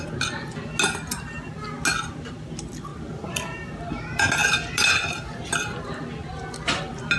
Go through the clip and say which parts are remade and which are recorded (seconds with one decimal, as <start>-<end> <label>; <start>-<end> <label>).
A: 0.0-7.2 recorded